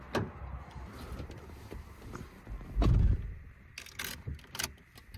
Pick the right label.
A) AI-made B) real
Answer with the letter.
B